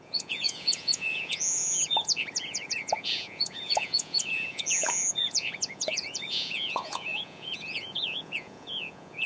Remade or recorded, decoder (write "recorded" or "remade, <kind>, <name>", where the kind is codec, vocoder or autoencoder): remade, vocoder, Vocos